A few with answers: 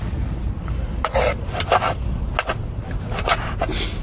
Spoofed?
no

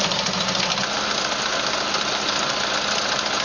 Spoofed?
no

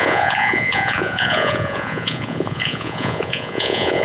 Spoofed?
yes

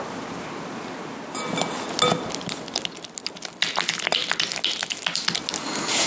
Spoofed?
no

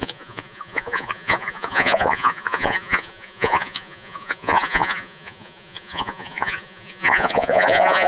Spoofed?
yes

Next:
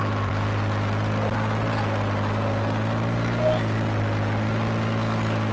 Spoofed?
no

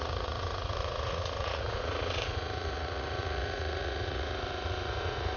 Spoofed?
yes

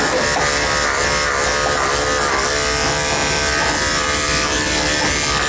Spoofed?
no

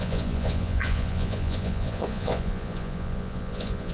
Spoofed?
yes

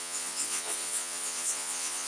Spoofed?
yes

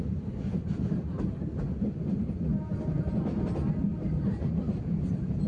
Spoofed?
no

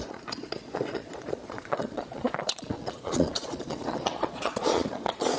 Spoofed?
yes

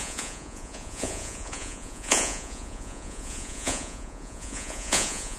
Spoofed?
yes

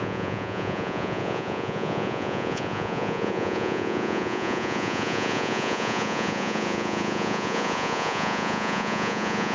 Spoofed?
yes